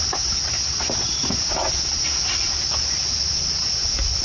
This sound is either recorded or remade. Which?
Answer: recorded